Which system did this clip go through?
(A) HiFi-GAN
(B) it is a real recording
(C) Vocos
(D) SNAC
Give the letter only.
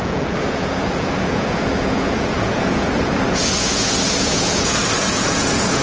C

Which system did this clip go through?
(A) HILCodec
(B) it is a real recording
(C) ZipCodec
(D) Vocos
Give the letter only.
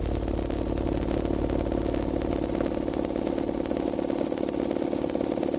B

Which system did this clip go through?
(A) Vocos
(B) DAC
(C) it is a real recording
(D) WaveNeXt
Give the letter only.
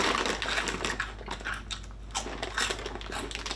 C